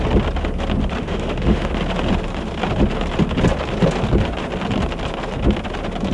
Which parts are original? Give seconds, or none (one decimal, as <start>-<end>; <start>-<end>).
0.0-1.0; 1.7-6.1